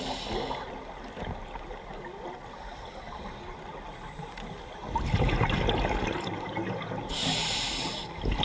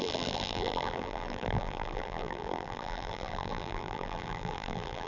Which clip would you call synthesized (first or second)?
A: second